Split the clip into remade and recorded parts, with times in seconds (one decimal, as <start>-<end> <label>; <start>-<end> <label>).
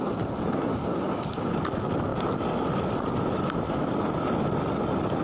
0.0-0.7 recorded; 0.7-1.5 remade; 1.5-5.2 recorded